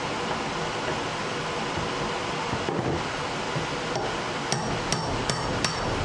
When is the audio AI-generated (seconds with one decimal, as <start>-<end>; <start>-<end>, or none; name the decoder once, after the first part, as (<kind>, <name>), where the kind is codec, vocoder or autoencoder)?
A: none